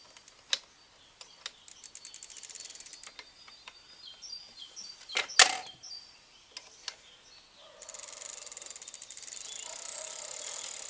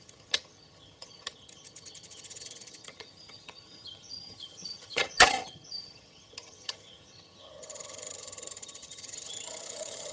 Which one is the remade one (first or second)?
second